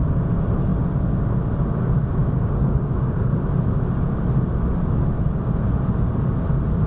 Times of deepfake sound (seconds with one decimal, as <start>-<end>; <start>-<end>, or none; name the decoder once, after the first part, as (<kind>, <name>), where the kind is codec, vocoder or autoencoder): 2.2-3.4 (codec, DAC)